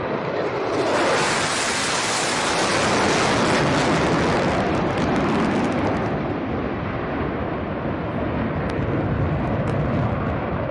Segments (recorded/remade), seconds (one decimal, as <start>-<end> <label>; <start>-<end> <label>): 0.0-10.7 recorded